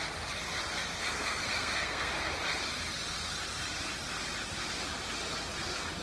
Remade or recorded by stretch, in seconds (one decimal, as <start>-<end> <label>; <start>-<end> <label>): 0.0-1.0 recorded; 1.0-2.1 remade; 2.1-6.0 recorded